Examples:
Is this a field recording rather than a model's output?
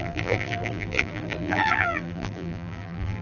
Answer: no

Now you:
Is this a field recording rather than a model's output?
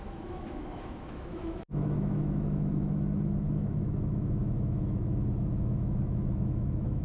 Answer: no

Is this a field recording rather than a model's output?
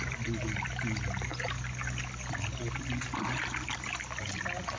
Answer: yes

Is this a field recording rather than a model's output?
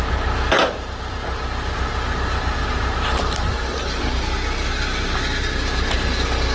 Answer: yes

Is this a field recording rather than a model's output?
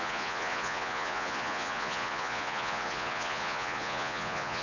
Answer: no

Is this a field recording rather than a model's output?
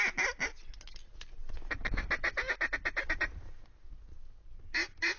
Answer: yes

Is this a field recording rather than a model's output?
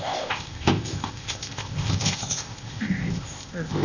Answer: no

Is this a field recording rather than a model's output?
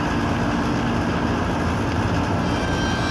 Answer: yes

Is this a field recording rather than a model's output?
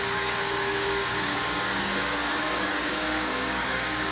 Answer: no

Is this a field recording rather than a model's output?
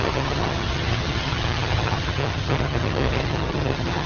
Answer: no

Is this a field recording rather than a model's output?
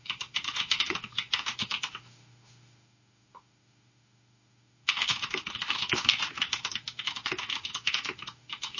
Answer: no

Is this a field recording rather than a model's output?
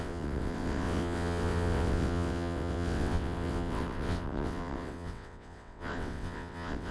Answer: no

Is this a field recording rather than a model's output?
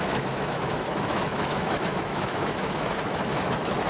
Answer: no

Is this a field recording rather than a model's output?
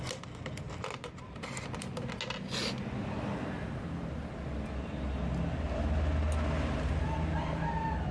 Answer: yes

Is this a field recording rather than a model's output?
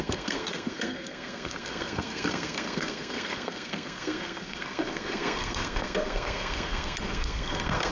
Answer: no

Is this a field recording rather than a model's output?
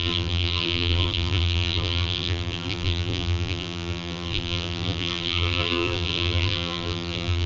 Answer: no